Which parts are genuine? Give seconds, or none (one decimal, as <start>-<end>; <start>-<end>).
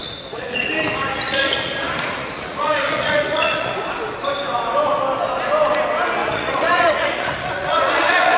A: 0.7-1.1; 3.7-6.2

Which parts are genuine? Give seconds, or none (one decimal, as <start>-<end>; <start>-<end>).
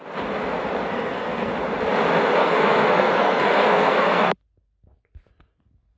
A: 0.0-0.8; 1.5-2.4; 4.3-6.0